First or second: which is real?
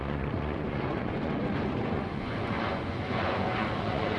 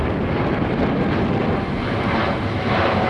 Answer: second